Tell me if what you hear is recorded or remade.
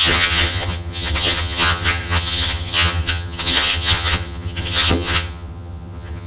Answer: remade